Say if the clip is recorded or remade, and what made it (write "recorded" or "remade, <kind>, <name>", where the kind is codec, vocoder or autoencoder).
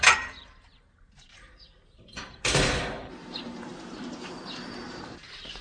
remade, vocoder, BigVGAN v2